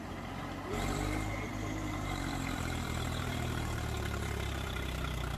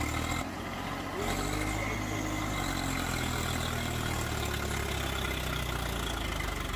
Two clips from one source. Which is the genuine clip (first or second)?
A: second